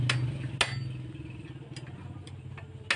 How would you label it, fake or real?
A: real